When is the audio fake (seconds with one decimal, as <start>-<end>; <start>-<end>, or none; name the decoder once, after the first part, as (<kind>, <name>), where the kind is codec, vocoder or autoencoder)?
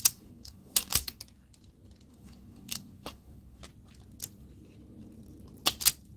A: 0.0-1.2 (codec, DAC); 2.1-3.6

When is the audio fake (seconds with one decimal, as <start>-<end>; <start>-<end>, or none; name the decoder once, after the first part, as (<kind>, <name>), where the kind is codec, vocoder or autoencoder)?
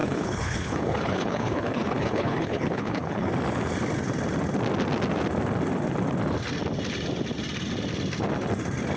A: 0.0-3.3 (codec, HILCodec)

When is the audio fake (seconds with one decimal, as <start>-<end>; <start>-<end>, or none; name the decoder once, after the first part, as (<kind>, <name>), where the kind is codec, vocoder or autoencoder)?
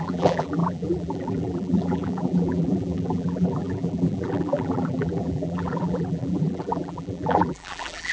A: 0.0-8.1 (vocoder, BigVGAN v2)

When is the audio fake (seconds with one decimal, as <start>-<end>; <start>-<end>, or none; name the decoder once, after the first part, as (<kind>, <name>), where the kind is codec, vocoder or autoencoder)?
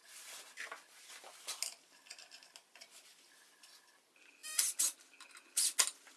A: none